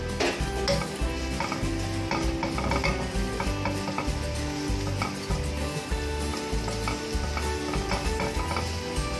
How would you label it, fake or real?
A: real